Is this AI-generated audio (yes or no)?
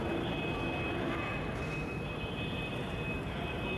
no